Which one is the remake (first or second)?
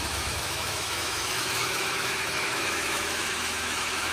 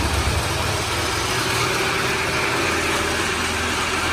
first